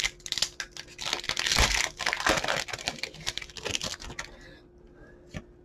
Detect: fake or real real